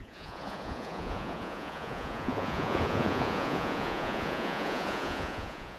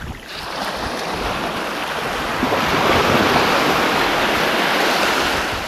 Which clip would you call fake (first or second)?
first